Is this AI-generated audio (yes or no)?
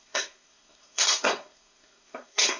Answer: yes